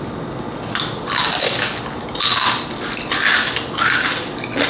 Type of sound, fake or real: real